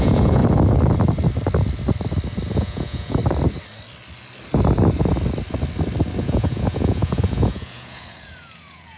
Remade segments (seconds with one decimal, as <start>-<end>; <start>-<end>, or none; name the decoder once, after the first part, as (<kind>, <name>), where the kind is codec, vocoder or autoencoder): 0.0-0.4 (vocoder, Vocos); 2.5-3.2; 6.2-9.0